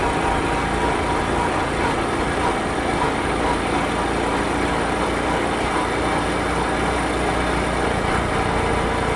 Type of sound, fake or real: real